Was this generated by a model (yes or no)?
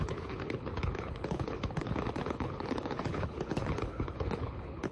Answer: yes